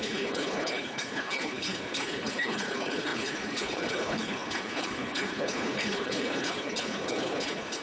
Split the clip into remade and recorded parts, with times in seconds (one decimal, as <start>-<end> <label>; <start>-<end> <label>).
0.0-7.8 remade